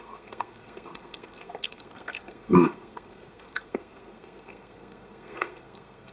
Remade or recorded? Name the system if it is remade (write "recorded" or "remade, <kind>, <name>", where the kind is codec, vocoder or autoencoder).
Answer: remade, codec, SNAC